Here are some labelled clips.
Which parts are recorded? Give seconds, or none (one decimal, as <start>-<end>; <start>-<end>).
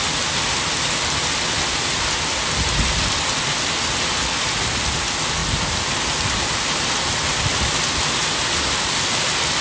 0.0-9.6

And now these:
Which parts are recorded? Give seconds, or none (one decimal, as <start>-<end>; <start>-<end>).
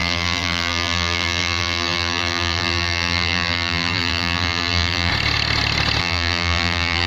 5.1-6.0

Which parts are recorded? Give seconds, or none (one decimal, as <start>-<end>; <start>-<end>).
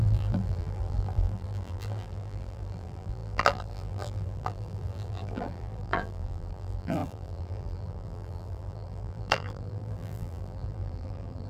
none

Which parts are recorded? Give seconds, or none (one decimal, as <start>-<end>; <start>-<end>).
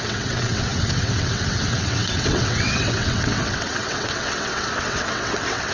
none